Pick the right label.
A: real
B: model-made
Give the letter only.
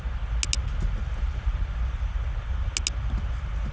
A